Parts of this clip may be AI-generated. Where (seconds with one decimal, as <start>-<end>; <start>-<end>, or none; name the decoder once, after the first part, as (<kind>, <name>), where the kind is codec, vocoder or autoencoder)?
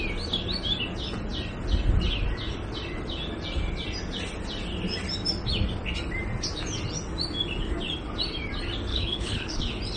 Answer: 8.9-9.6 (codec, HILCodec)